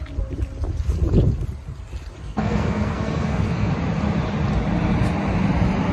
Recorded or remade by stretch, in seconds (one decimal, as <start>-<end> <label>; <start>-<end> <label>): 0.0-2.2 recorded; 2.2-3.7 remade; 3.7-5.9 recorded